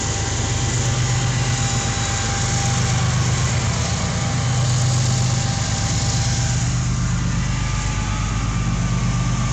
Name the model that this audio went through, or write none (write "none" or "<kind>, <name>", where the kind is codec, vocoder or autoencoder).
none